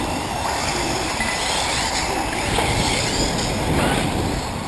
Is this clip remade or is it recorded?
recorded